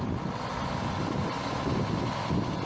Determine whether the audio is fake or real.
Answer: real